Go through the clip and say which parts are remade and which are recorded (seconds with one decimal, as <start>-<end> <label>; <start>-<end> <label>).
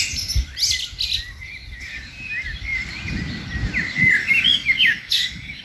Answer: 0.0-4.2 recorded; 4.2-5.6 remade